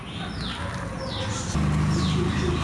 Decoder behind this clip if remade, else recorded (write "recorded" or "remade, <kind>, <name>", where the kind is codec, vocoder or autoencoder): recorded